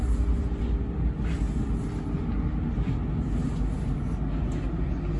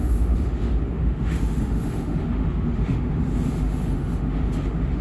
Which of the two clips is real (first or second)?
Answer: first